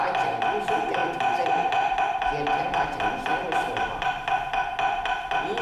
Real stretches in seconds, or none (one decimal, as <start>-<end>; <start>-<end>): 0.0-5.6